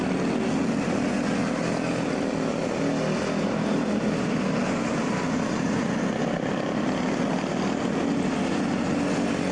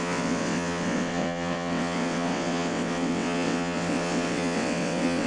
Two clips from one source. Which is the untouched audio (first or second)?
first